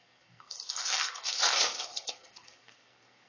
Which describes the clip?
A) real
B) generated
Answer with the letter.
B